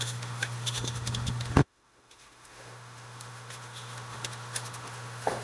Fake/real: fake